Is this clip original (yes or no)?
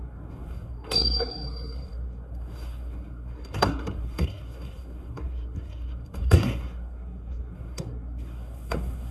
no